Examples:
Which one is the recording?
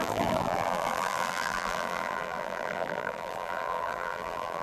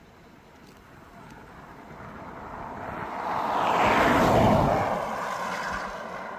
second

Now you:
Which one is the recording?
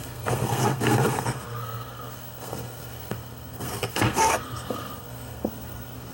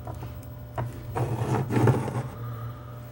second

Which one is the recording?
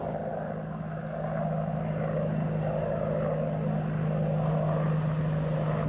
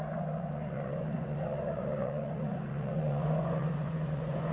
first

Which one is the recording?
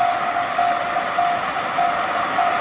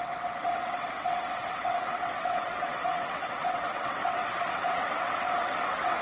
first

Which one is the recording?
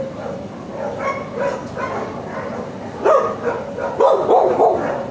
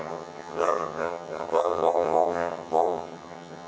first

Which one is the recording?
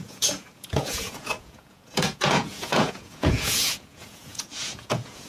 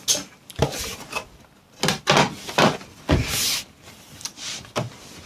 second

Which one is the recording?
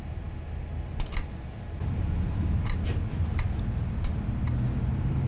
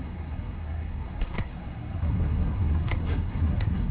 first